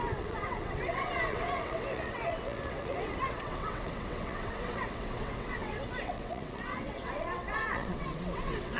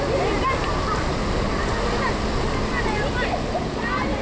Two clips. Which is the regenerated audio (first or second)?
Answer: first